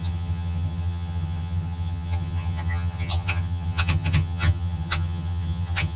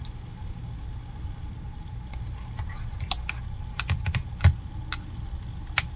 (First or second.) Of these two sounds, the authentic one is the second